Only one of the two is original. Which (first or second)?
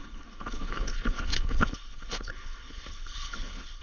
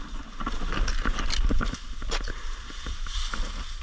second